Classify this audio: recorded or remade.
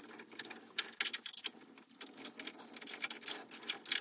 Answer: recorded